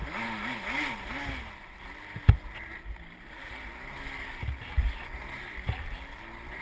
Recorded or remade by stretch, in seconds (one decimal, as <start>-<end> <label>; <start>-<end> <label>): 0.0-6.6 recorded